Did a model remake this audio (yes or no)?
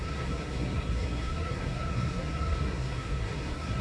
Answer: yes